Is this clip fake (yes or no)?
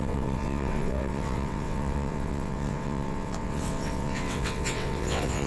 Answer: yes